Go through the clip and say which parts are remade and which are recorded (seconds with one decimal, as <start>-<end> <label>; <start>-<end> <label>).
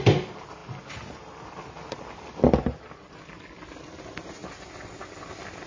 0.0-5.7 recorded